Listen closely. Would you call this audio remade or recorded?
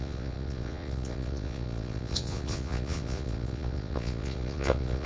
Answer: remade